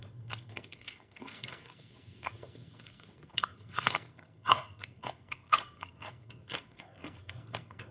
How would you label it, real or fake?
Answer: fake